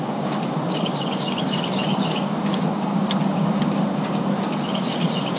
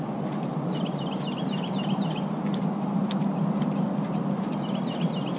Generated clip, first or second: first